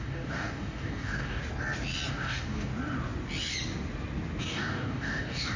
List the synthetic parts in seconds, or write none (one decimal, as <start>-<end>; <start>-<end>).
0.0-1.4; 2.1-2.7; 4.4-5.6